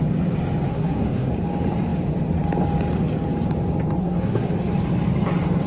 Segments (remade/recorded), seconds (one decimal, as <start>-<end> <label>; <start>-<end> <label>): 0.0-0.7 recorded; 0.7-1.3 remade; 1.3-4.0 recorded; 4.0-4.5 remade; 4.5-5.7 recorded